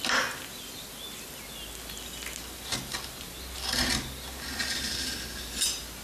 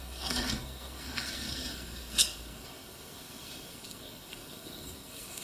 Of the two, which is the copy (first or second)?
second